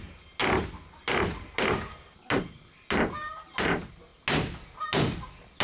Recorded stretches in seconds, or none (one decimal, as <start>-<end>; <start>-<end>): 0.0-5.6